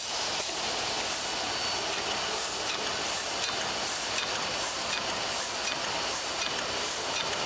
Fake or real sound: real